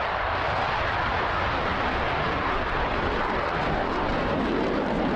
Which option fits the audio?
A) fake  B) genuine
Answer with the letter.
B